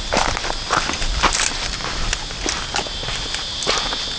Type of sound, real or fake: real